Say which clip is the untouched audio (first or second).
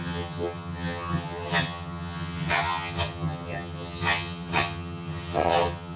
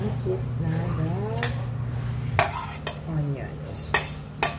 second